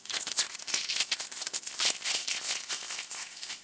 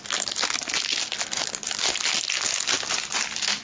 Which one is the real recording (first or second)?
second